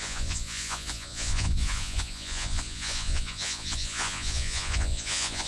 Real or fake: fake